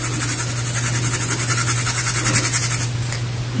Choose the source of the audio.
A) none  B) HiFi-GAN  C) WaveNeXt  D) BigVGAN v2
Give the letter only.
A